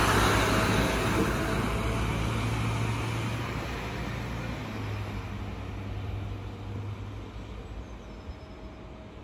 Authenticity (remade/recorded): recorded